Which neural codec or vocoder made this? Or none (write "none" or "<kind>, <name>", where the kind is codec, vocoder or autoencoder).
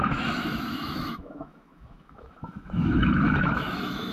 autoencoder, DAC-VAE